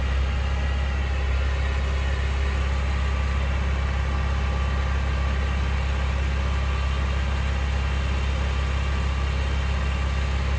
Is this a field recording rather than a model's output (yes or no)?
yes